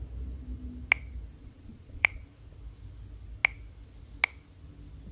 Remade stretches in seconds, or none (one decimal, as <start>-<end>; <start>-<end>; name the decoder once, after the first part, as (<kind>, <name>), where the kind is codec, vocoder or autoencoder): 1.4-2.2 (vocoder, Vocos)